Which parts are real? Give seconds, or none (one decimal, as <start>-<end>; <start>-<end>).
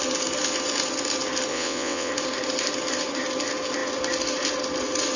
0.0-1.5; 2.1-5.2